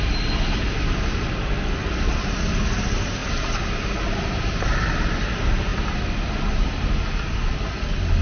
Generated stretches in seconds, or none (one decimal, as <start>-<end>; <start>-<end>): none